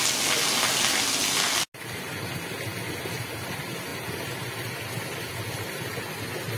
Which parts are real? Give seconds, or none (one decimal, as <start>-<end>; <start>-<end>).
0.0-6.6